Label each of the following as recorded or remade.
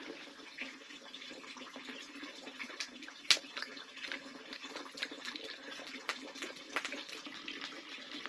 recorded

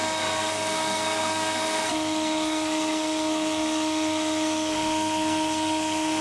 remade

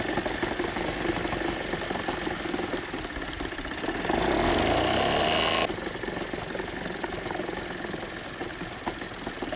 recorded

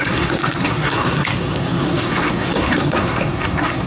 remade